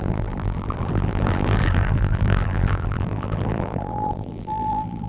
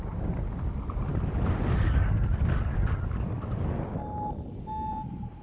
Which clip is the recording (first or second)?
second